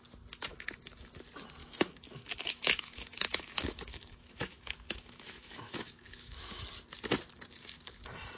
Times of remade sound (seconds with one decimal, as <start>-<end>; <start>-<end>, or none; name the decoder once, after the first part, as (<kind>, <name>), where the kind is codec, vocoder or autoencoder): 0.5-1.1 (autoencoder, DAC-VAE); 1.6-6.6